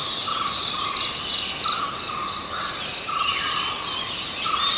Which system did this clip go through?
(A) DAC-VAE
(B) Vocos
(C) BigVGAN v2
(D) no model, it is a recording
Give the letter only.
D